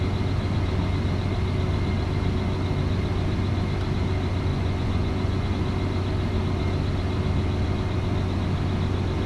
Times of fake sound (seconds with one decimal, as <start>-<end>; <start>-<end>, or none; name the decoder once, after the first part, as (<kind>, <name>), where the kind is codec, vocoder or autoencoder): 4.5-5.5 (vocoder, Vocos)